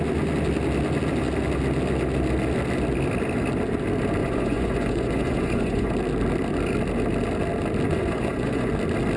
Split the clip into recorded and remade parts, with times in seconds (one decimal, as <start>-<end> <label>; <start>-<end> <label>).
0.0-4.2 recorded; 4.2-5.9 remade; 5.9-7.9 recorded; 7.9-8.7 remade; 8.7-9.2 recorded